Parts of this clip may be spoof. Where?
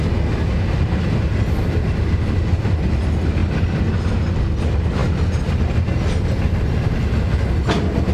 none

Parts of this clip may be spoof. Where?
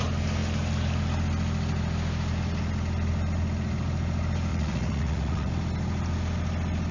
4.5-5.5 (vocoder, Vocos)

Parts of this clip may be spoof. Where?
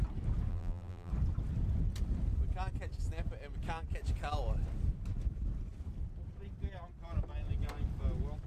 0.5-1.1 (vocoder, BigVGAN v2)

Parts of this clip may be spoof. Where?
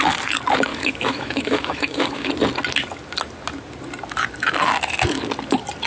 0.7-2.3 (autoencoder, DAC-VAE)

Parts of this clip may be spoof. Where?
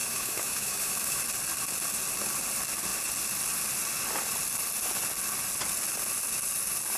0.0-1.2 (autoencoder, DAC-VAE)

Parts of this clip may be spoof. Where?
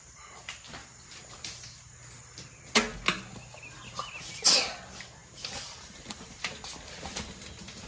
0.8-1.9 (vocoder, BigVGAN v2); 5.2-6.4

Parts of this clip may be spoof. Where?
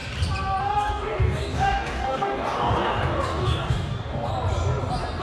0.6-4.3 (codec, DAC)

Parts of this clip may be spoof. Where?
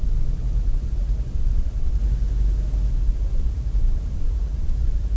0.0-2.0 (vocoder, BigVGAN v2); 2.9-5.2